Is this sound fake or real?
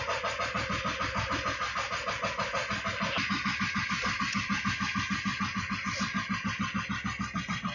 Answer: real